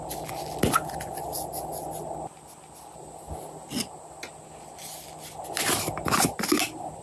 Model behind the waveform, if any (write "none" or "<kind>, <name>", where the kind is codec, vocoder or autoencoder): none